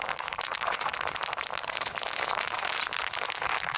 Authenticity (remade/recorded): remade